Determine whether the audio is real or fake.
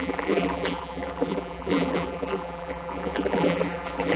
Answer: fake